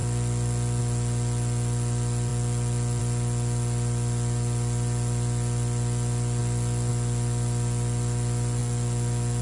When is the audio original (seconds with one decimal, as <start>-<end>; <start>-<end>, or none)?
0.0-9.4